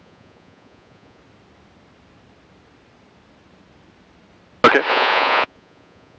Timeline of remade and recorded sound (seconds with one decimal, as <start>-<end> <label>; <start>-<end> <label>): 0.0-1.2 remade; 1.2-4.9 recorded; 4.9-6.2 remade